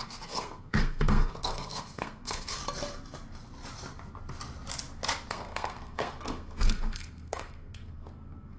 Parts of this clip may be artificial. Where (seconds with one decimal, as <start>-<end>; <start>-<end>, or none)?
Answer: 0.0-2.6; 5.3-8.6